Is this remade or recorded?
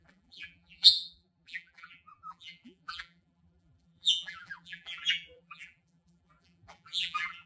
remade